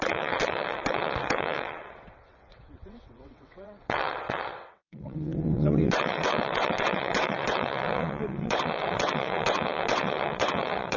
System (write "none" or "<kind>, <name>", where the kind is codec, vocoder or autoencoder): vocoder, WaveNeXt